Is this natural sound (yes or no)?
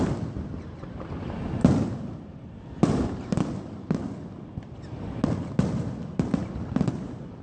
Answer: yes